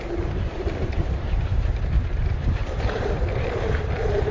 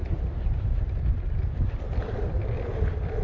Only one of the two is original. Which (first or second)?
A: second